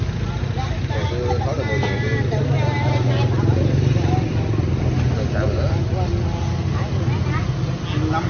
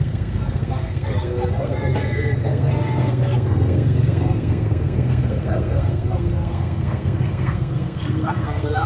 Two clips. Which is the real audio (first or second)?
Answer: first